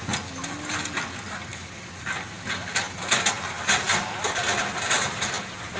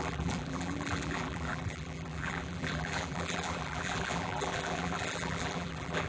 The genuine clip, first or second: first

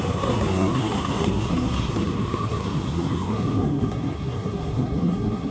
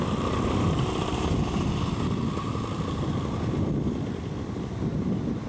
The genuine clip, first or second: second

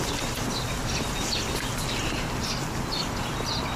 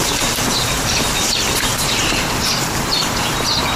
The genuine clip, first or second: first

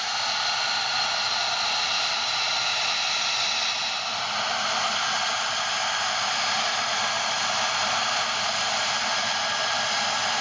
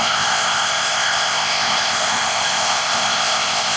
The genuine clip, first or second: first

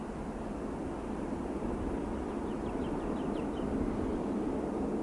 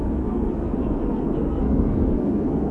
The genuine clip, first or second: first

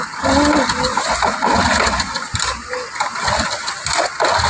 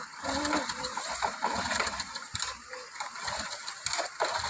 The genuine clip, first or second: first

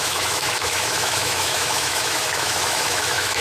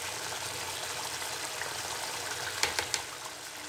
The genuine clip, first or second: second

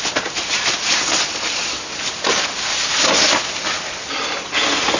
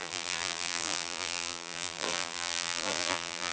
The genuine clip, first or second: first